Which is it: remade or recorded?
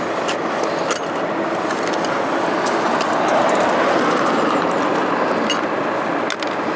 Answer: recorded